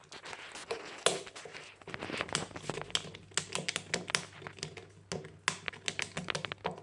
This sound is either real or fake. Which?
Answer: real